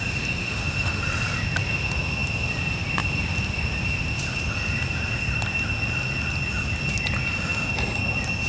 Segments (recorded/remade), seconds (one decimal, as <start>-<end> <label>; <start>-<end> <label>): 0.0-0.4 recorded; 0.4-1.0 remade; 1.0-8.5 recorded